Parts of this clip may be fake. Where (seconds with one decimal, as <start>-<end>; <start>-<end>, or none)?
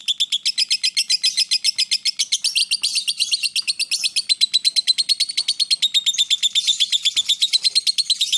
none